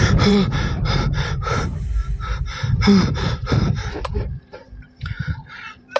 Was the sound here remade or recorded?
remade